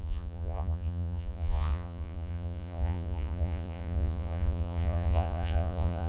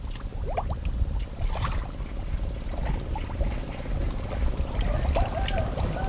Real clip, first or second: second